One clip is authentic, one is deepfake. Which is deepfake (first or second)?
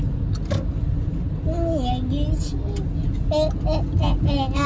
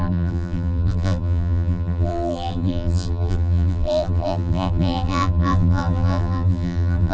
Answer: second